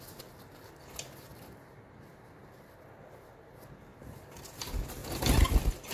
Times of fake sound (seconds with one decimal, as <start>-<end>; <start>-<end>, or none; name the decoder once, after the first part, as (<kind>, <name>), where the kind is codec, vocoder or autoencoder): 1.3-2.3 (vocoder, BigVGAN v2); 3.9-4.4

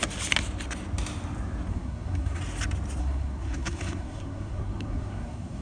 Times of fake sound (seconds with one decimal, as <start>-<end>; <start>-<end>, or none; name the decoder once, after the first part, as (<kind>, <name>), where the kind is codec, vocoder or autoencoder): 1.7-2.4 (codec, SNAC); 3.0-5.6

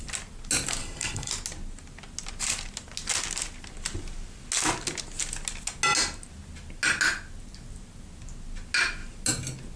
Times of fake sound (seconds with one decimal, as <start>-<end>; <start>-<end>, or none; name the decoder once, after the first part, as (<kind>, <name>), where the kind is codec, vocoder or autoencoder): 0.8-1.3 (codec, HILCodec)

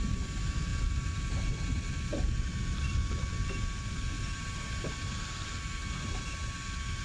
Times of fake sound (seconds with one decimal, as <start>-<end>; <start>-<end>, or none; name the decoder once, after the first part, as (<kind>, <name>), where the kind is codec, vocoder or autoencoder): none

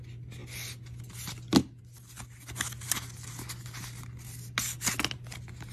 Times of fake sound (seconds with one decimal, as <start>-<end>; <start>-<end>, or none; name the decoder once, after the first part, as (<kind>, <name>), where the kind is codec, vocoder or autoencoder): none

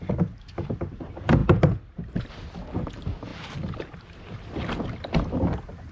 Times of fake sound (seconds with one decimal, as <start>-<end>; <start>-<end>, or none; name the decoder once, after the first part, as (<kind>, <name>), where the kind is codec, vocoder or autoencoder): 3.3-4.5 (vocoder, BigVGAN v2)

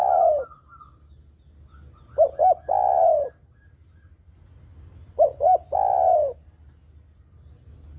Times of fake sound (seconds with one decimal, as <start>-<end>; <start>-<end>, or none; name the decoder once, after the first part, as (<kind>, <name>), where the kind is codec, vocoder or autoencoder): none